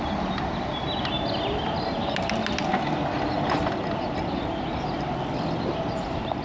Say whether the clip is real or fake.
real